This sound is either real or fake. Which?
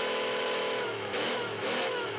fake